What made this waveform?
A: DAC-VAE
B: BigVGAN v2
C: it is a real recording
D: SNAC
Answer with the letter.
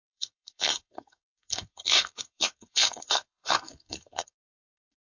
D